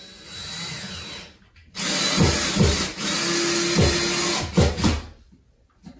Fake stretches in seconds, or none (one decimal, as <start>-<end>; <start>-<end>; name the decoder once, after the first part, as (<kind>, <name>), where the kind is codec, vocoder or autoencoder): none